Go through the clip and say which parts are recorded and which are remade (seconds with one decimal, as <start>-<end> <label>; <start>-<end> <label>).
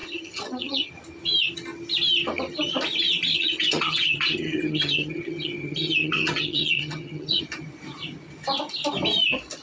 0.0-0.9 remade; 0.9-3.3 recorded; 3.3-7.4 remade; 7.4-9.6 recorded